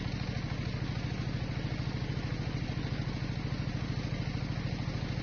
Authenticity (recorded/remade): recorded